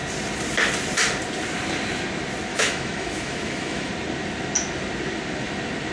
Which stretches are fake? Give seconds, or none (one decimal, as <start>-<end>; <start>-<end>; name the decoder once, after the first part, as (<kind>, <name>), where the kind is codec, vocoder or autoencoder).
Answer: 2.5-3.9 (autoencoder, DAC-VAE)